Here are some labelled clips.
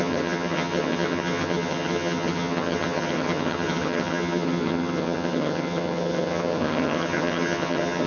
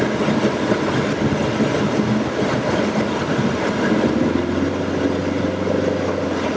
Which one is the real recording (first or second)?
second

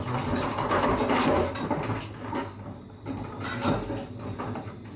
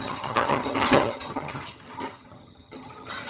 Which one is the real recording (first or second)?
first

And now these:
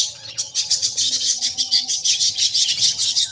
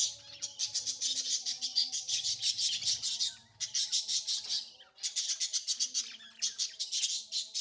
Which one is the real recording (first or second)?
second